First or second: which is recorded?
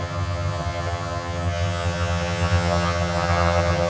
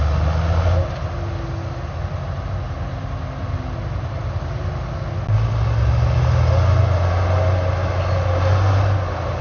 second